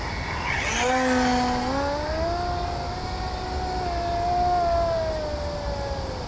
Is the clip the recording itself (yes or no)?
yes